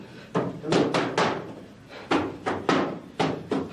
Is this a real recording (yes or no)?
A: yes